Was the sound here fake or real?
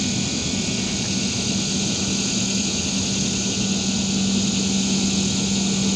real